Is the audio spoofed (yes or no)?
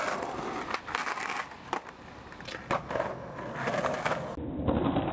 no